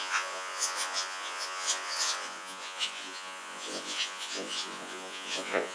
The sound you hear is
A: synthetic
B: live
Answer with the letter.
A